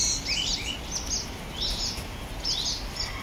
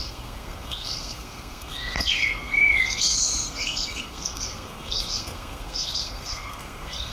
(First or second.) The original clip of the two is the first